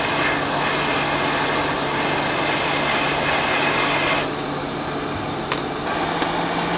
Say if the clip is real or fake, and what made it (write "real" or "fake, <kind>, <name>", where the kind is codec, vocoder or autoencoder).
real